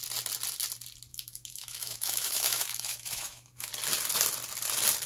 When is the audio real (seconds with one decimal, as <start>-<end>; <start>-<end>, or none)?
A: 0.0-1.1; 3.7-5.1